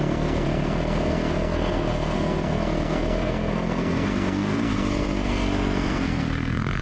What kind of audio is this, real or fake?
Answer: fake